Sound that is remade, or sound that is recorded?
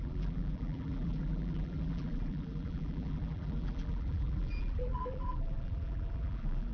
remade